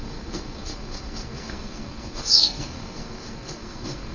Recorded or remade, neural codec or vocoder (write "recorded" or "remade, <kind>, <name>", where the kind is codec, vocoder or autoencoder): remade, codec, SNAC